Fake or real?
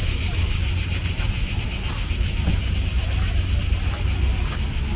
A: real